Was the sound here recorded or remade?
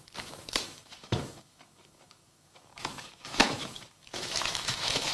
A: remade